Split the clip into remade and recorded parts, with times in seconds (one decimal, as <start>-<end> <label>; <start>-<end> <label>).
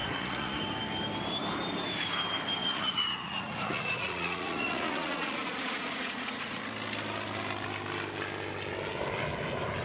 0.0-0.6 remade; 0.6-2.6 recorded; 2.6-6.6 remade; 6.6-9.8 recorded